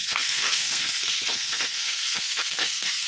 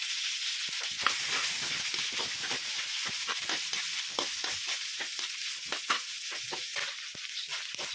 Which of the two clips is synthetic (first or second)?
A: first